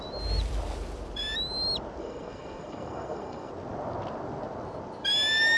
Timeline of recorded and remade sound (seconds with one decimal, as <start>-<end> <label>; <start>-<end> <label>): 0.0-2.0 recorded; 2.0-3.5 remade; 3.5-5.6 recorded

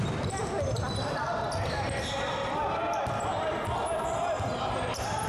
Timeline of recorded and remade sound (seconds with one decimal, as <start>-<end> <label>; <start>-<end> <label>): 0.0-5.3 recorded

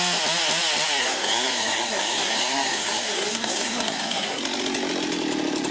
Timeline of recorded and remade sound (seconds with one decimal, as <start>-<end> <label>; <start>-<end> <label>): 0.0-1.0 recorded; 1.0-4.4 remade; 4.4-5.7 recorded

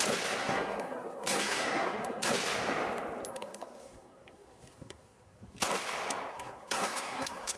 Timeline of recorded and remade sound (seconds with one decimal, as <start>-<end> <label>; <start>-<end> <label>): 0.0-0.4 recorded; 0.4-2.3 remade; 2.3-3.3 recorded; 3.3-5.4 remade; 5.4-6.3 recorded; 6.3-7.6 remade